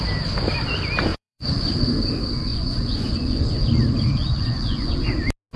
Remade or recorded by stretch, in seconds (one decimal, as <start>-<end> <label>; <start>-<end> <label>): 0.0-1.1 recorded; 1.1-1.7 remade; 1.7-2.5 recorded; 2.5-3.8 remade; 3.8-4.2 recorded; 4.2-5.1 remade; 5.1-5.6 recorded